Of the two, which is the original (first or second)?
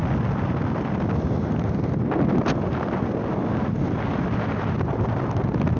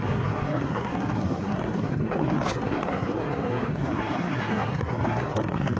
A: first